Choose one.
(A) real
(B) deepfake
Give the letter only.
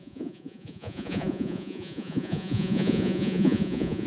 B